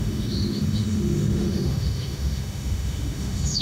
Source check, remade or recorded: remade